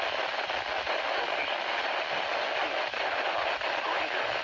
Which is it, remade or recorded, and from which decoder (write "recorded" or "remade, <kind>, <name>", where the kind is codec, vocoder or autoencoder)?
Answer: recorded